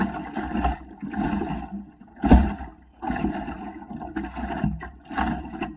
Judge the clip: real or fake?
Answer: real